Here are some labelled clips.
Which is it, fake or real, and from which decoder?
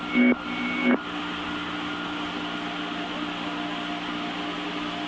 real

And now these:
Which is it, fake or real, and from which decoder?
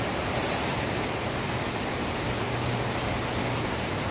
real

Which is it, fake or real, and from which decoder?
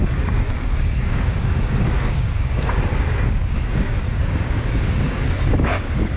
fake, codec, DAC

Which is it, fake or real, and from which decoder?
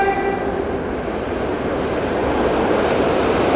real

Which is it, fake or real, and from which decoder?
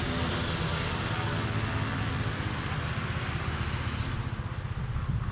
real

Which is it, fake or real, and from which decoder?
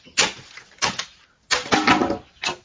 real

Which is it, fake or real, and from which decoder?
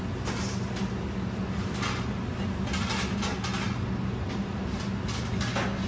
real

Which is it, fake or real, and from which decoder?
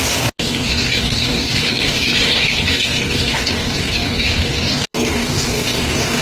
fake, codec, DAC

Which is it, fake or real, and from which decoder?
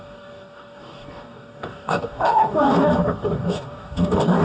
fake, codec, DAC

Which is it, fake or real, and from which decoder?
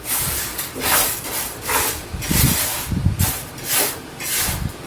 real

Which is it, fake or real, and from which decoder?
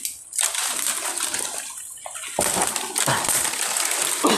real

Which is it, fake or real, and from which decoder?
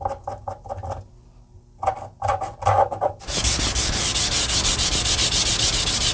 real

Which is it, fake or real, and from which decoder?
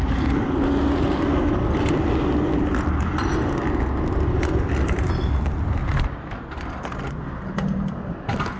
real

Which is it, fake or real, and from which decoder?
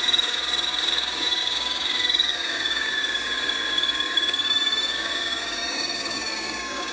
fake, codec, DAC